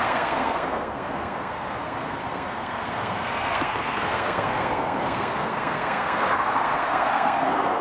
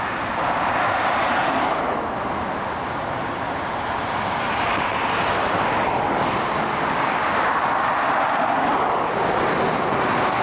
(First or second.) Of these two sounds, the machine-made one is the first